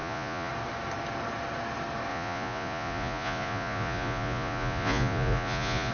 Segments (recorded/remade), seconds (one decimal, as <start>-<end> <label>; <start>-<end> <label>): 0.0-0.5 remade; 0.5-2.1 recorded; 2.1-5.9 remade